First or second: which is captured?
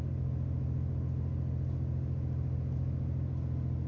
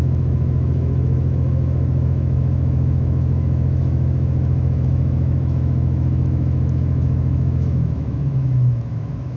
first